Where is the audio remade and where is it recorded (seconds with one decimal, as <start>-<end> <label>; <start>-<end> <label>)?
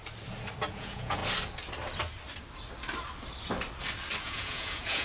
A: 0.0-0.7 recorded; 0.7-1.2 remade; 1.2-4.2 recorded; 4.2-5.0 remade